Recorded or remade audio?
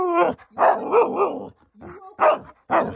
recorded